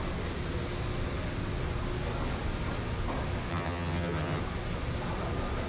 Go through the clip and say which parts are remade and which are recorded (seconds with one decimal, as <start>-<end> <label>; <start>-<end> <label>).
0.0-3.5 recorded; 3.5-4.4 remade; 4.4-5.7 recorded